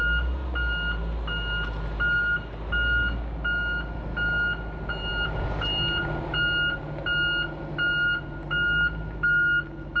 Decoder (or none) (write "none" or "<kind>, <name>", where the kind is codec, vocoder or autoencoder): none